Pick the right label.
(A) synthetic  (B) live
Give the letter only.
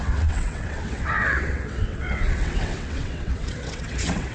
A